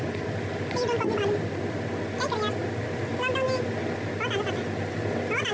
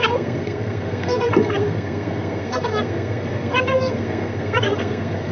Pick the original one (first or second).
first